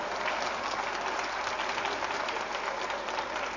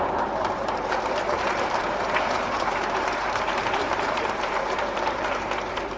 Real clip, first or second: first